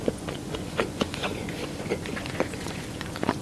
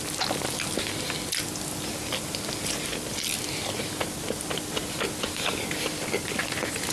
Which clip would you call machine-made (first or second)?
first